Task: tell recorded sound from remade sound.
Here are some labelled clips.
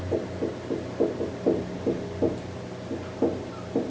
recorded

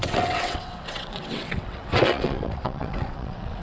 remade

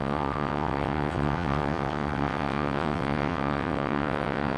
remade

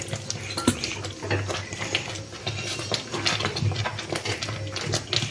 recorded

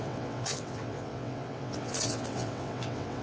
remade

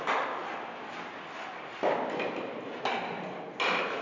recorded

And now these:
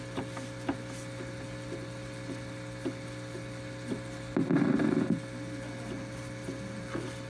recorded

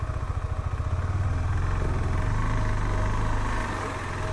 recorded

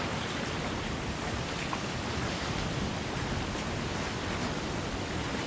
recorded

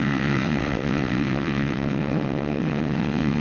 remade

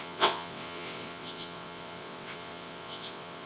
remade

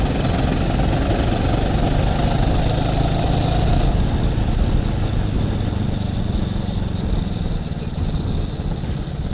recorded